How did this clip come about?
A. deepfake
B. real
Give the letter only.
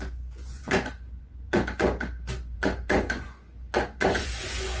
A